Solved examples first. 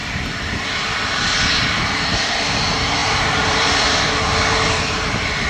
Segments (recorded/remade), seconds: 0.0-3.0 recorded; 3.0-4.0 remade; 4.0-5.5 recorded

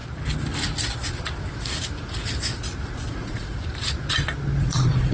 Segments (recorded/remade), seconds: 0.0-3.1 recorded; 3.1-3.6 remade; 3.6-4.6 recorded; 4.6-5.1 remade

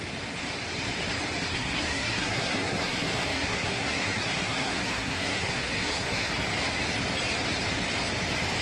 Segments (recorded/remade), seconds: 0.0-1.5 recorded; 1.5-6.3 remade; 6.3-8.6 recorded